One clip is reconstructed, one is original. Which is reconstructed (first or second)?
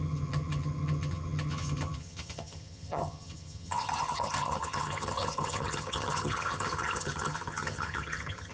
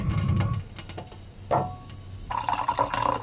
first